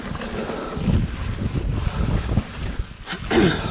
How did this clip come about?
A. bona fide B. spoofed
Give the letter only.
A